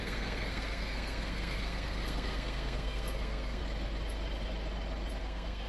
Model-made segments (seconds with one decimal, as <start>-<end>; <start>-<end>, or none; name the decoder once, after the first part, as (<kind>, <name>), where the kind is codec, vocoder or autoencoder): 0.0-3.6 (codec, SNAC); 5.2-5.7